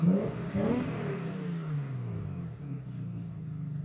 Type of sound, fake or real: fake